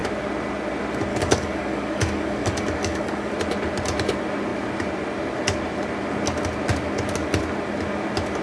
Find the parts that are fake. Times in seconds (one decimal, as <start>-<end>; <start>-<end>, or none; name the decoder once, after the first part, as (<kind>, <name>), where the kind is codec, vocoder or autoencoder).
1.1-3.3 (codec, DAC)

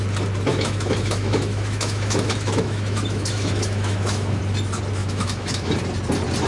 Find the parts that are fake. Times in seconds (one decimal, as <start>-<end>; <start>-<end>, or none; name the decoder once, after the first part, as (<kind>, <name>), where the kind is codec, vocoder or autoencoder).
0.5-4.4 (autoencoder, DAC-VAE); 5.0-5.7

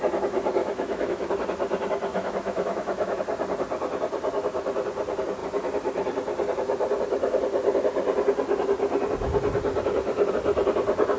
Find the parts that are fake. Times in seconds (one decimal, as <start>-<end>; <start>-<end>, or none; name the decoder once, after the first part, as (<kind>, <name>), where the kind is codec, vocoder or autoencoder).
0.6-1.3 (autoencoder, DAC-VAE); 2.1-3.2

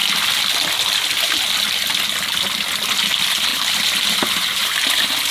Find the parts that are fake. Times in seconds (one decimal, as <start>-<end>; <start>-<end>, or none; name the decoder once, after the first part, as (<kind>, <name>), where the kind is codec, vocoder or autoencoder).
3.5-5.3 (vocoder, BigVGAN v2)

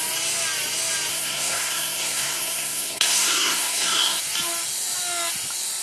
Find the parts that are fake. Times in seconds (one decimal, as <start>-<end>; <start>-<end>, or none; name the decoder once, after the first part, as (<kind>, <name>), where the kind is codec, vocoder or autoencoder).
1.1-4.2 (codec, SNAC)

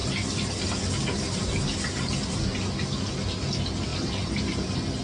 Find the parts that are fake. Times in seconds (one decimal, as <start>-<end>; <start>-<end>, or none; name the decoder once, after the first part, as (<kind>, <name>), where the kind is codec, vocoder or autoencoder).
none